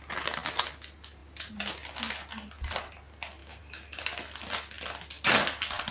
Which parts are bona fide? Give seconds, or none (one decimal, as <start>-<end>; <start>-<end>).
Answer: 0.0-3.4; 4.0-5.9